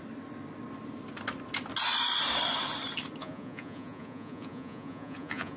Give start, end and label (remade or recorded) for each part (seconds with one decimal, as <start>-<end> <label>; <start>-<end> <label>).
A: 0.0-3.2 recorded; 3.2-5.6 remade